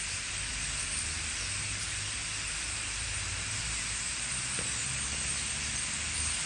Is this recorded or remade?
remade